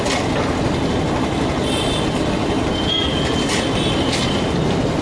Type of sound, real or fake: real